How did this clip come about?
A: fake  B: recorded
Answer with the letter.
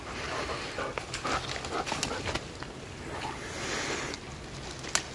B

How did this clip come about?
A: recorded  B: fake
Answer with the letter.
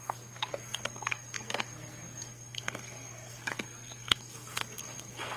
B